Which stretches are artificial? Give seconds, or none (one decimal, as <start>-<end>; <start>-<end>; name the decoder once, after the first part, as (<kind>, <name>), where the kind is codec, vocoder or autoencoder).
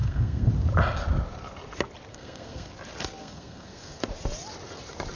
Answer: 0.0-0.5 (codec, SNAC); 2.1-2.7; 3.2-4.0